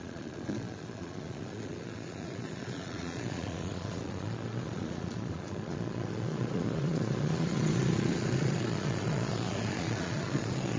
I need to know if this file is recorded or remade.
remade